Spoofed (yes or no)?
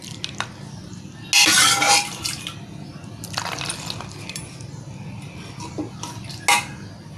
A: no